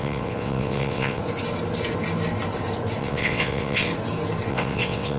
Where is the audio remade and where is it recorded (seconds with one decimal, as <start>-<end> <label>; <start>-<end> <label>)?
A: 0.0-1.2 remade; 1.2-3.0 recorded; 3.0-3.9 remade; 3.9-4.5 recorded; 4.5-5.2 remade